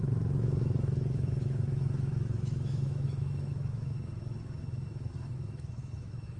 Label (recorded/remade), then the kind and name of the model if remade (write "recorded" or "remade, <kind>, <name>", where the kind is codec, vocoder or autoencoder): remade, autoencoder, DAC-VAE